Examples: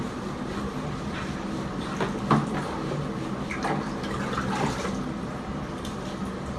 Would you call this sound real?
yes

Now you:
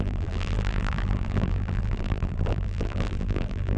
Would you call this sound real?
no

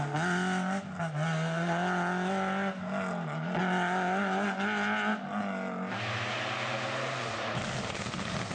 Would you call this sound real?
yes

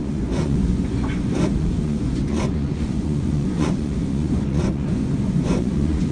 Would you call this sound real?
no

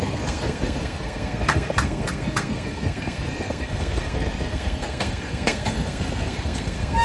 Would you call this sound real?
no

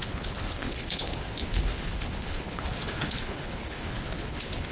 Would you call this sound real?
no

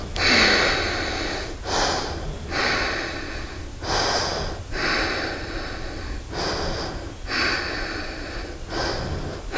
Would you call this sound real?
yes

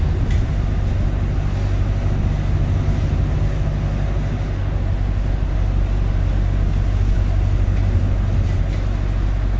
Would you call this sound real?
yes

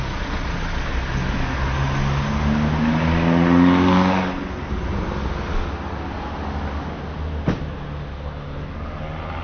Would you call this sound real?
yes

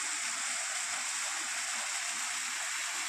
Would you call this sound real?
yes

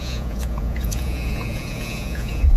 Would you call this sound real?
no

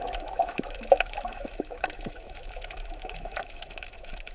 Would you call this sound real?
no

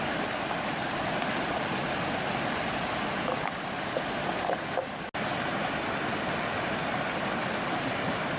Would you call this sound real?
yes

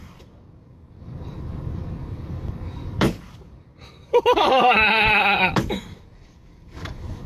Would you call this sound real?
no